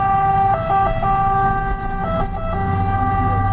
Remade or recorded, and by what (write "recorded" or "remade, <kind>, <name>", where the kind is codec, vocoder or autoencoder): recorded